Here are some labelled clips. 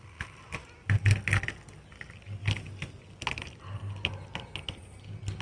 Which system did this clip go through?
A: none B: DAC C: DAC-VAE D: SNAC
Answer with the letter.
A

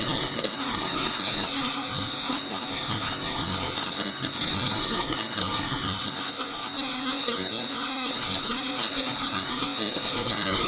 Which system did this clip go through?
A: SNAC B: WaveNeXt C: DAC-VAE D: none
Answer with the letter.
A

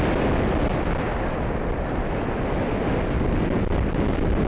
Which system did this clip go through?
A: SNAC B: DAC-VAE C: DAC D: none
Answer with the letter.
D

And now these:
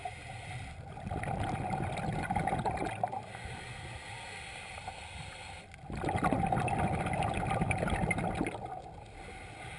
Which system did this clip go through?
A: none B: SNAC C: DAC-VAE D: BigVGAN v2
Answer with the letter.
A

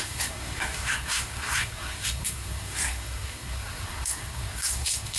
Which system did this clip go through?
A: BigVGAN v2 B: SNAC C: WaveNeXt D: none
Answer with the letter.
B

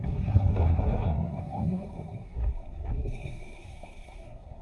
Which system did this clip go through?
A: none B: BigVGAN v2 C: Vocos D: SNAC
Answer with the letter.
D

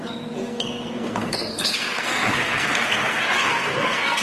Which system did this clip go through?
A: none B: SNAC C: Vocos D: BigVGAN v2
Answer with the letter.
B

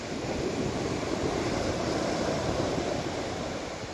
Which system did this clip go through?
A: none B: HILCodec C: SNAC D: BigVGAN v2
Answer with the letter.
A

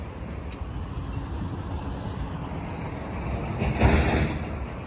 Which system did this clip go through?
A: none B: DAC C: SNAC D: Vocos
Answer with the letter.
A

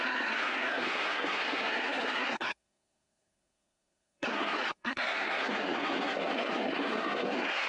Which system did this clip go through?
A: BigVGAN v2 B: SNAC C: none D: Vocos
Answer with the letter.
B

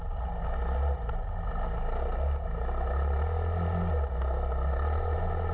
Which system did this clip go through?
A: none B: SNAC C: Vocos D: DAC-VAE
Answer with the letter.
A